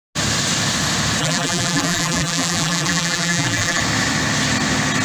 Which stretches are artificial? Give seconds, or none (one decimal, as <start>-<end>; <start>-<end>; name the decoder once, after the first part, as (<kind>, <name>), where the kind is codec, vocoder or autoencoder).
1.2-3.8 (vocoder, BigVGAN v2)